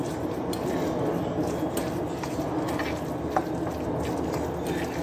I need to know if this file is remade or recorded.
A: recorded